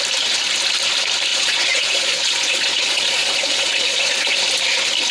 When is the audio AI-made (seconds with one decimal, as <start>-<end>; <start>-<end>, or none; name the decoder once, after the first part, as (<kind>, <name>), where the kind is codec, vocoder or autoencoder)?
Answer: 1.3-4.4 (vocoder, Vocos)